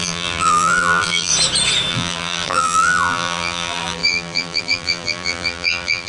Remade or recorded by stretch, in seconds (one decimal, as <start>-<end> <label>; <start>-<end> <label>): 0.0-1.3 remade; 1.3-1.9 recorded; 1.9-6.1 remade